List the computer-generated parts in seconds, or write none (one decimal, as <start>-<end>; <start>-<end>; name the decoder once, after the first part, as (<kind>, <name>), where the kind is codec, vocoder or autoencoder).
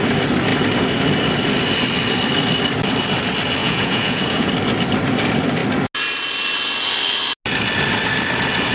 3.6-4.5 (vocoder, Vocos)